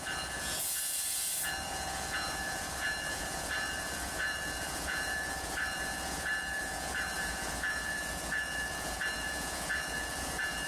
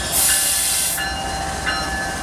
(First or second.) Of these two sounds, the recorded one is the second